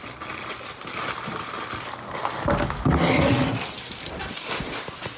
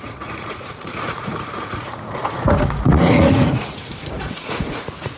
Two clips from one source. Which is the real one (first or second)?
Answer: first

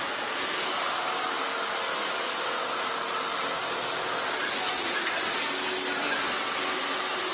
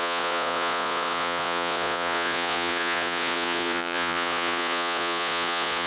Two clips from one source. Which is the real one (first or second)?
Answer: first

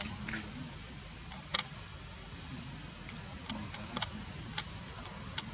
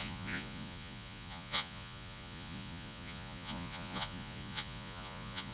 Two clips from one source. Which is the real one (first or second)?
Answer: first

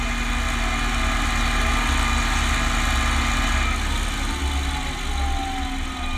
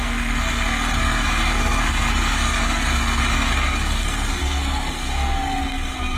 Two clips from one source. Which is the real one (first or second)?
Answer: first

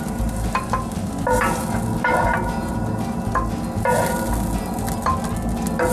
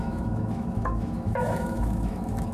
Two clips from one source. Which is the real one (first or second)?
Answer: first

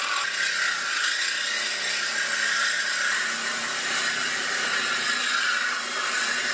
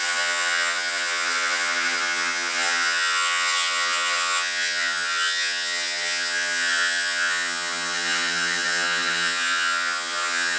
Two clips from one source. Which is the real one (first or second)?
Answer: first